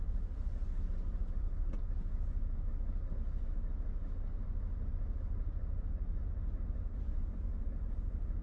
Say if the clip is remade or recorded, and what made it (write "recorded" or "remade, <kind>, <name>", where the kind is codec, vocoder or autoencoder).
recorded